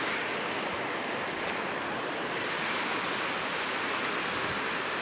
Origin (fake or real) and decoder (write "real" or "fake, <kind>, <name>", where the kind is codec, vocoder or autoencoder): real